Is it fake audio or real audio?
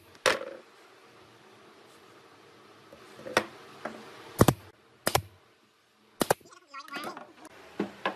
real